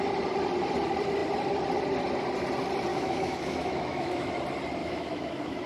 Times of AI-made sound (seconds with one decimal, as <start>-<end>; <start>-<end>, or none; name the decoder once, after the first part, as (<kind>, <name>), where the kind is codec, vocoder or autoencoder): 2.9-4.3 (autoencoder, DAC-VAE); 4.8-5.7